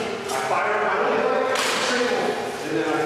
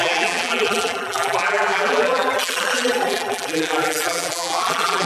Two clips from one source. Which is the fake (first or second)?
second